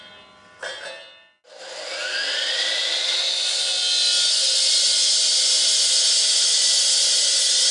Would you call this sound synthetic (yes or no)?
no